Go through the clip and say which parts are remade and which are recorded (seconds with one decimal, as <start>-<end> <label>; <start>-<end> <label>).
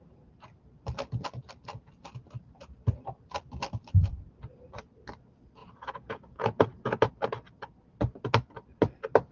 0.0-5.6 recorded; 5.6-7.1 remade; 7.1-9.3 recorded